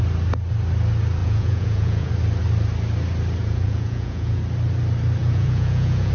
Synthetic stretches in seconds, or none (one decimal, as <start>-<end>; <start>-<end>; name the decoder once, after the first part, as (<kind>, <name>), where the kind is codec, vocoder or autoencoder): 1.2-2.1 (vocoder, Vocos); 3.4-4.4; 5.2-6.1